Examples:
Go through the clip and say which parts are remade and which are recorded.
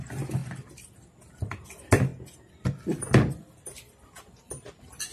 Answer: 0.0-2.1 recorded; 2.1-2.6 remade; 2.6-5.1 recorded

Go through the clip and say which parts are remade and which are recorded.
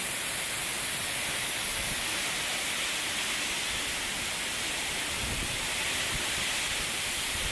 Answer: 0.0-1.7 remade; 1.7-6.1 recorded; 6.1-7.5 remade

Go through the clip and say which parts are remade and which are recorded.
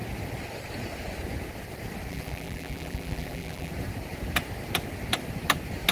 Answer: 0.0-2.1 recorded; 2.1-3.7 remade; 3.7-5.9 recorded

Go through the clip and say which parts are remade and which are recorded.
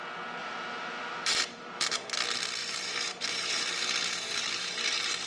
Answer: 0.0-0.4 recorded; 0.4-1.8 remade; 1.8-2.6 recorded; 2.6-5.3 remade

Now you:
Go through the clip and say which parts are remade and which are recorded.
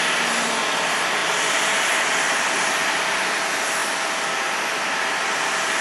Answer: 0.0-5.8 recorded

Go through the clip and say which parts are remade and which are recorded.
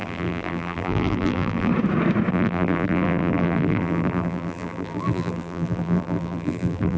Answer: 0.0-1.7 remade; 1.7-2.3 recorded; 2.3-7.0 remade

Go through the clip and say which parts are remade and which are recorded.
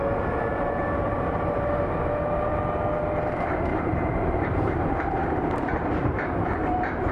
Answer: 0.0-0.5 recorded; 0.5-2.6 remade; 2.6-3.7 recorded; 3.7-7.1 remade